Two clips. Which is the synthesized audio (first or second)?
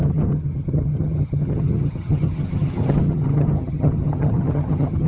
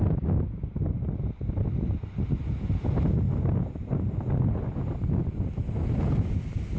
first